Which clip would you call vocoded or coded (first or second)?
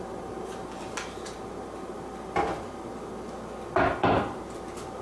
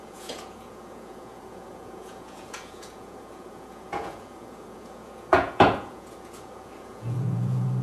second